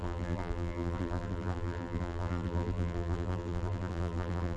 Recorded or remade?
remade